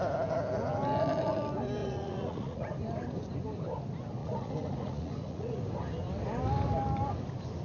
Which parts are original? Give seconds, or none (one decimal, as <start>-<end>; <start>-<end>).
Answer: 0.0-1.8; 2.7-4.2; 5.6-7.6